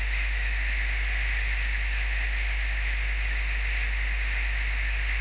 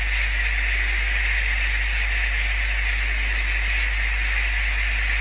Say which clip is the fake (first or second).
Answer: first